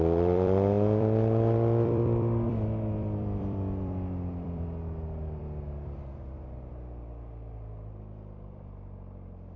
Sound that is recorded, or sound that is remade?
remade